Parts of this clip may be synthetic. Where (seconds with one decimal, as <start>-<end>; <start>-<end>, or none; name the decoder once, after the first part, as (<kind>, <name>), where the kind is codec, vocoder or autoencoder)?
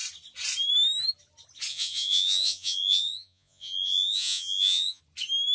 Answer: 1.7-5.0 (vocoder, Vocos)